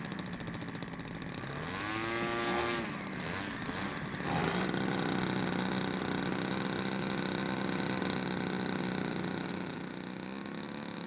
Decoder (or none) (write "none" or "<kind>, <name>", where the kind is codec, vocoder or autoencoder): none